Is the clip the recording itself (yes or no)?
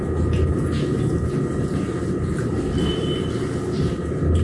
yes